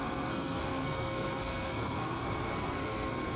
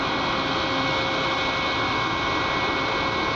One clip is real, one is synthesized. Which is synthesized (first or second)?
first